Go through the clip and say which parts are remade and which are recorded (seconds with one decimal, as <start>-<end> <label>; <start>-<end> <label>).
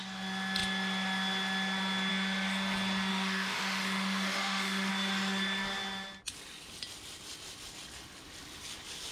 0.0-3.1 recorded; 3.1-4.9 remade; 4.9-9.1 recorded